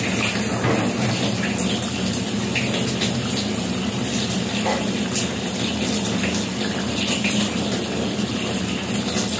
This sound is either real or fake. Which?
real